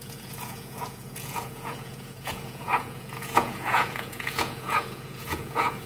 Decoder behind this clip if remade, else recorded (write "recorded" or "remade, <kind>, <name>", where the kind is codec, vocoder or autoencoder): remade, vocoder, Vocos